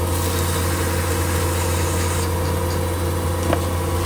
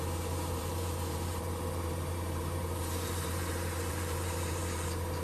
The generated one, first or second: second